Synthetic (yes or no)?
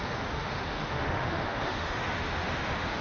yes